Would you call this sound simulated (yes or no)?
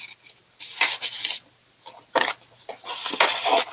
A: no